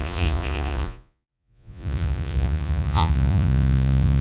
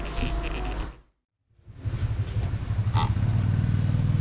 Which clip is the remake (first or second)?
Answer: first